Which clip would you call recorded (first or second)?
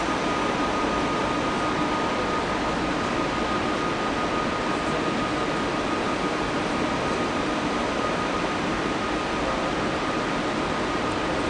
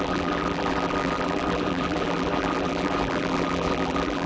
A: first